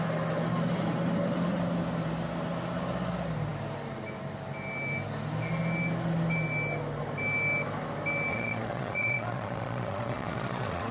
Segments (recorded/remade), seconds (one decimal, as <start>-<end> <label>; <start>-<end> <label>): 0.0-8.3 recorded; 8.3-10.9 remade

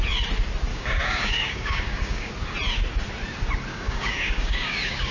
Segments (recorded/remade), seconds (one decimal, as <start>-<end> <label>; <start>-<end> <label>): 0.0-0.7 recorded; 0.7-2.3 remade; 2.3-3.7 recorded; 3.7-5.1 remade

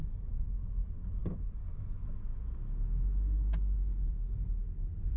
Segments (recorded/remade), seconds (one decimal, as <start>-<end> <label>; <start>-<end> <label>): 0.0-5.2 recorded

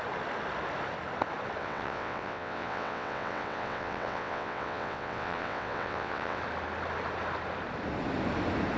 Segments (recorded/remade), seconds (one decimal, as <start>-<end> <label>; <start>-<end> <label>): 0.0-1.6 recorded; 1.6-6.4 remade; 6.4-8.8 recorded

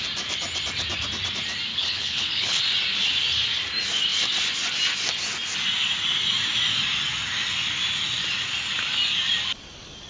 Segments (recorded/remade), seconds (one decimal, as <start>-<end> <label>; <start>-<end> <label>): 0.0-1.7 recorded; 1.7-2.6 remade; 2.6-10.1 recorded

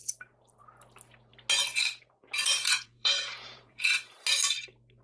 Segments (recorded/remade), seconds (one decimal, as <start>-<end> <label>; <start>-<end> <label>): 0.0-2.6 recorded; 2.6-3.9 remade; 3.9-5.0 recorded

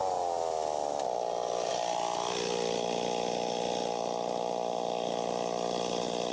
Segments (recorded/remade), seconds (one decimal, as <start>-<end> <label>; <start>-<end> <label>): 0.0-6.3 recorded

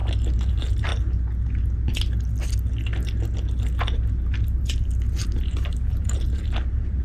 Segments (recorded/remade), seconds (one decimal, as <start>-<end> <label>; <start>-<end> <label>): 0.0-0.5 recorded; 0.5-0.9 remade; 0.9-4.4 recorded; 4.4-7.0 remade